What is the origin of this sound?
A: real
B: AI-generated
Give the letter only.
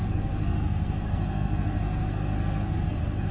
B